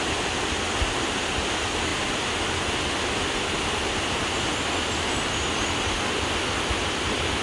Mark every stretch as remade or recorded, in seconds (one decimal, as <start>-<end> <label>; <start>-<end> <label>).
0.0-7.4 recorded